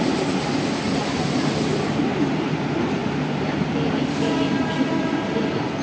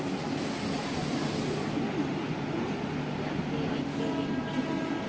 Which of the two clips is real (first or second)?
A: second